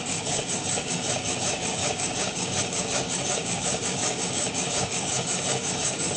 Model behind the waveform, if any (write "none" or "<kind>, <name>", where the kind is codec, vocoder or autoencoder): codec, DAC